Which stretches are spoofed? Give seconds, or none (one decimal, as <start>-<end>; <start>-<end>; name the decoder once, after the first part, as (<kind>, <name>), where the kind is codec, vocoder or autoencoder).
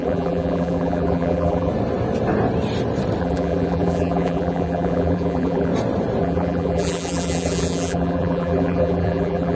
0.0-1.7 (vocoder, BigVGAN v2); 3.2-5.7; 6.2-9.5